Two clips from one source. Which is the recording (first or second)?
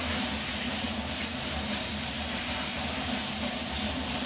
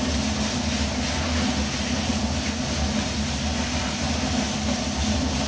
second